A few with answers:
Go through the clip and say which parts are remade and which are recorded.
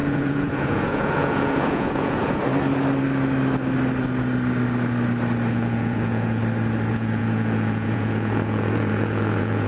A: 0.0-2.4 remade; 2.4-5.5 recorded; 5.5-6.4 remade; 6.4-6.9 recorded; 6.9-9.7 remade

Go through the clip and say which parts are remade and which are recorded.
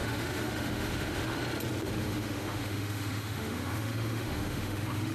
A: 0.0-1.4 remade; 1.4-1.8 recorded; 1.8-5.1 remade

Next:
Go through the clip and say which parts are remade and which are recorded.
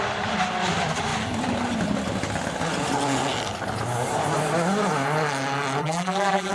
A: 0.0-5.8 recorded; 5.8-6.5 remade